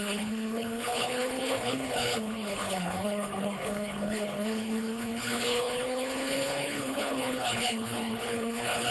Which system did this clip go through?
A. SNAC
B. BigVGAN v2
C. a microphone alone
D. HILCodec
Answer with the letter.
D